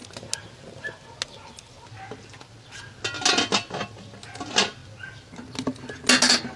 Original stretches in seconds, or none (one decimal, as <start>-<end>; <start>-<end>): 0.0-6.6